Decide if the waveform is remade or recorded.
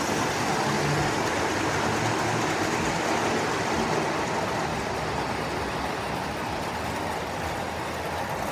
recorded